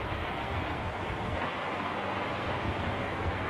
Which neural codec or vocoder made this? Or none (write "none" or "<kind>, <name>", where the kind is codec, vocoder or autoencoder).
codec, SNAC